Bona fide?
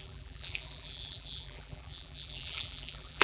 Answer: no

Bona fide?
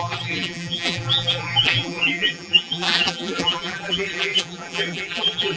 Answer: no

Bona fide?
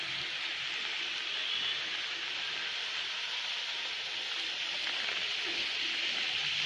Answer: yes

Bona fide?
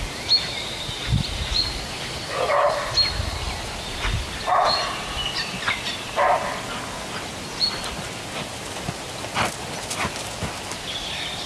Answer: yes